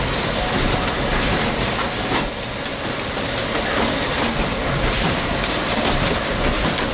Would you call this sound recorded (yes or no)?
yes